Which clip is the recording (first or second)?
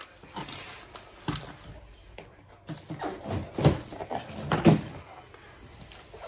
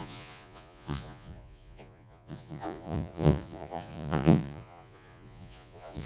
first